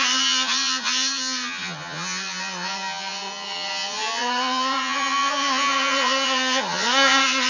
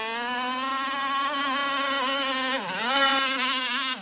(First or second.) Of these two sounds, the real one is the second